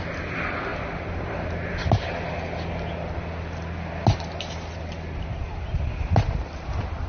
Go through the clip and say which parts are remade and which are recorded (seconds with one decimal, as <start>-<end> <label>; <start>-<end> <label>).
0.0-7.1 recorded